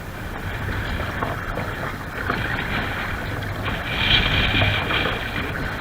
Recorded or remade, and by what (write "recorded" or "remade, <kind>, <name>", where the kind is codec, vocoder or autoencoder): recorded